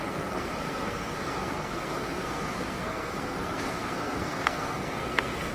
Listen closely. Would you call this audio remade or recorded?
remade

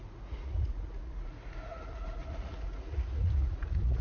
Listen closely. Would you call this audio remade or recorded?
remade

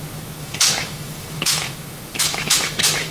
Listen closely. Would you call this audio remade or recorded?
remade